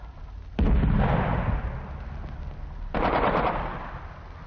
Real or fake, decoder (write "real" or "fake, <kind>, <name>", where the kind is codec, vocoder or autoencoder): real